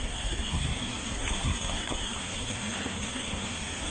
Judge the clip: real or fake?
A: fake